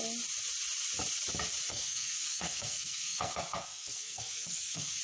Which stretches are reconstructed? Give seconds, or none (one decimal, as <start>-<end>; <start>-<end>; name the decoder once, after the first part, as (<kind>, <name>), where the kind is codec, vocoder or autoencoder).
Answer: 1.7-5.0 (codec, SNAC)